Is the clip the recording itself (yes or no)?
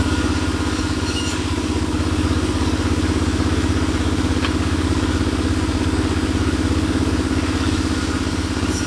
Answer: no